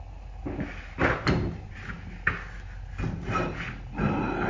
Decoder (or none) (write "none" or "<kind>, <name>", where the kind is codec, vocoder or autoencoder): none